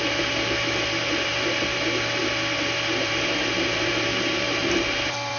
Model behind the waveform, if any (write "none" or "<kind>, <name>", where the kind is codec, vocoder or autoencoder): vocoder, BigVGAN v2